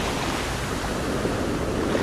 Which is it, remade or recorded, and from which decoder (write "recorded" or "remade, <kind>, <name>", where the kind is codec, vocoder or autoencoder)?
recorded